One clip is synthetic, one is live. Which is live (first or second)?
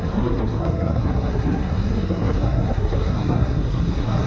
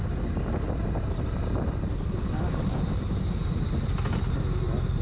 second